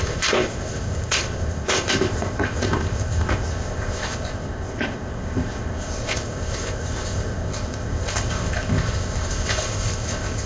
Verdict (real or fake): fake